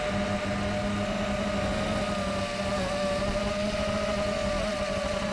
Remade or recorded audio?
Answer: recorded